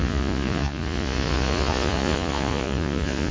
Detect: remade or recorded remade